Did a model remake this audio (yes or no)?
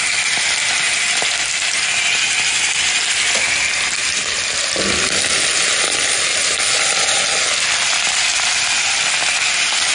no